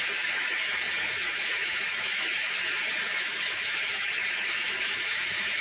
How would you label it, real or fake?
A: fake